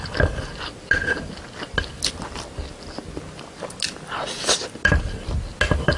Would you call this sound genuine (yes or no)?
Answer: yes